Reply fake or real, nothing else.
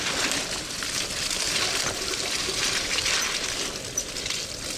real